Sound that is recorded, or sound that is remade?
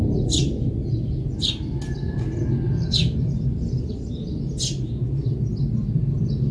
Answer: recorded